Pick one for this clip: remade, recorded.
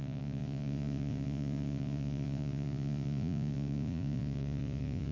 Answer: remade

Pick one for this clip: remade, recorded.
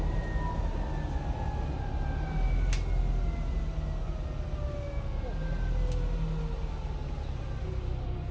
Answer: recorded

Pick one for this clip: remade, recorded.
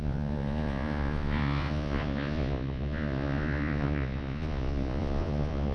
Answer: remade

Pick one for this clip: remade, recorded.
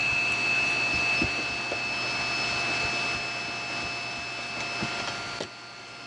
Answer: recorded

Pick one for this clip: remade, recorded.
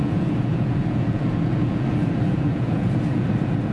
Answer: remade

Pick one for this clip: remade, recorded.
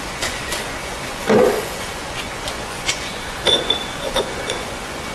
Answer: remade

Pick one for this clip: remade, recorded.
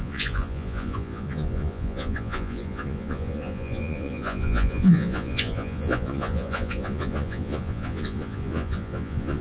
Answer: remade